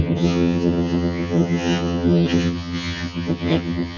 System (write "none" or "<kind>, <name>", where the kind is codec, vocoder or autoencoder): vocoder, HiFi-GAN